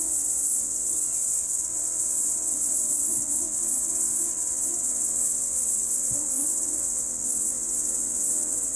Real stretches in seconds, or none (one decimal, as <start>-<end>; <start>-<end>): none